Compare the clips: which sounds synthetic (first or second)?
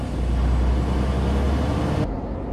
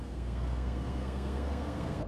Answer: second